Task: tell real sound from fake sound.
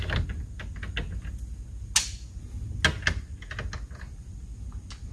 real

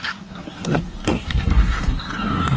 fake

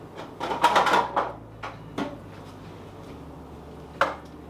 real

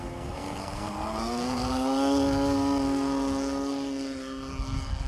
fake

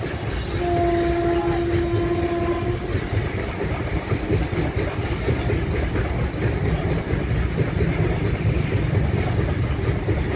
real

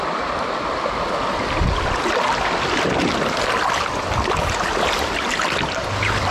real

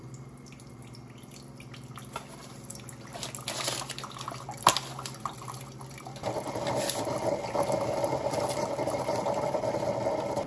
real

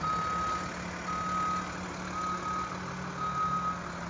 real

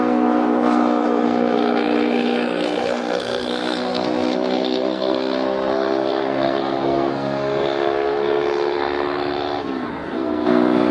fake